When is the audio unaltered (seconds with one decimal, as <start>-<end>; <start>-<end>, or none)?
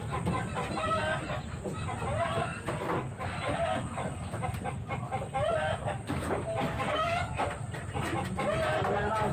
0.0-5.8; 7.4-9.3